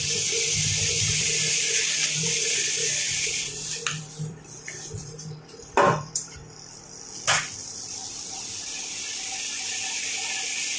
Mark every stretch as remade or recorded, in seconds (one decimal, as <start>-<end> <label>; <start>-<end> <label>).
0.0-0.9 remade; 0.9-1.7 recorded; 1.7-6.4 remade; 6.4-7.6 recorded; 7.6-8.0 remade; 8.0-9.6 recorded; 9.6-10.8 remade